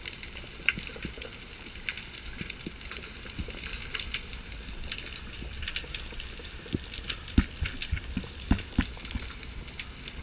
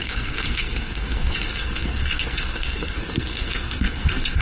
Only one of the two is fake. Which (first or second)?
second